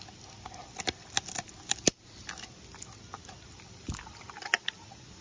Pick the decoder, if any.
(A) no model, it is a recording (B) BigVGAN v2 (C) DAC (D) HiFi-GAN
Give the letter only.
A